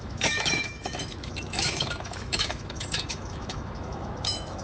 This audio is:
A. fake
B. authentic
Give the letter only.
A